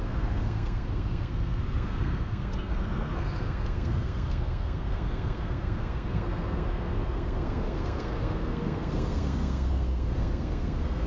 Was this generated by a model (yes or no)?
yes